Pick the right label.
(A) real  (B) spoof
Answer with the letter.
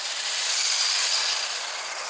A